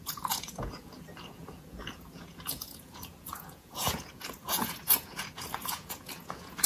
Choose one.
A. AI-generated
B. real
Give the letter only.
A